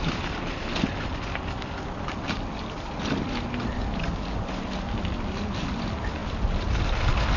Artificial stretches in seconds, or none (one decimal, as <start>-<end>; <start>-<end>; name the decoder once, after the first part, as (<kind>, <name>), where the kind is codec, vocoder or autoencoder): none